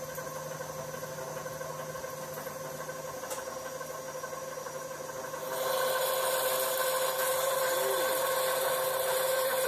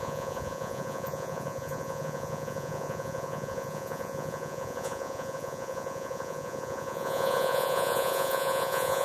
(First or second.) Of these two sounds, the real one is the first